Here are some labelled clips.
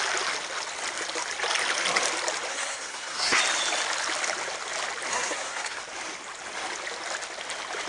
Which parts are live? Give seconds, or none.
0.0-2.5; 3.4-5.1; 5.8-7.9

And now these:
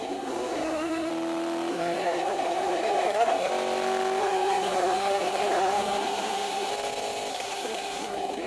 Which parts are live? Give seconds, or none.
1.1-1.7; 3.5-4.2; 6.7-7.3

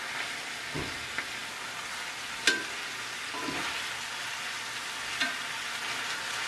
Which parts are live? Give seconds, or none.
0.0-6.5

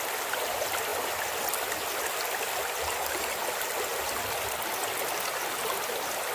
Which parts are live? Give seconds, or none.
0.0-6.3

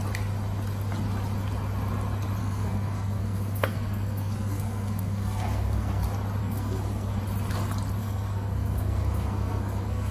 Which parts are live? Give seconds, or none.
0.0-2.4; 6.0-6.4; 7.2-8.0

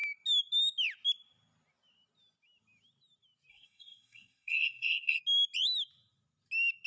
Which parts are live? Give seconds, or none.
0.0-3.5; 5.2-6.9